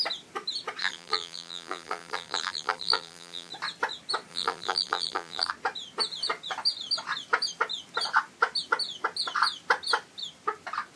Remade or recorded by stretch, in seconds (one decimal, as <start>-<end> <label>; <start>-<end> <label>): 0.0-0.8 recorded; 0.8-3.5 remade; 3.5-4.3 recorded; 4.3-5.5 remade; 5.5-11.0 recorded